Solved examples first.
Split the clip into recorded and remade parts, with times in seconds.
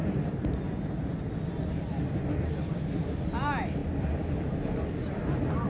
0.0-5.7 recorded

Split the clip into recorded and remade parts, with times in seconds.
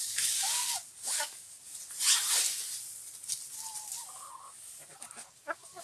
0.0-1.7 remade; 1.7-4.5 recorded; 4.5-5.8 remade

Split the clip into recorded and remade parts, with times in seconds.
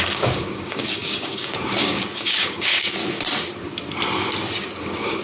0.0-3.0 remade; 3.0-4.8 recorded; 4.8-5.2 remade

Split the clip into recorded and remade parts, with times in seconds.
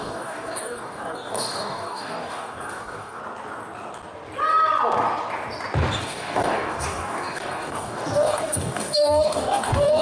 0.0-3.2 remade; 3.2-6.0 recorded; 6.0-10.0 remade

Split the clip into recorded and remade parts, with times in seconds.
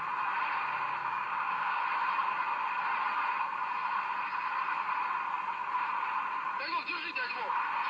0.0-1.0 recorded; 1.0-1.8 remade; 1.8-7.9 recorded